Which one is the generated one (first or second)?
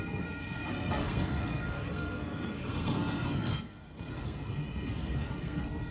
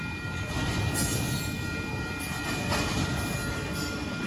first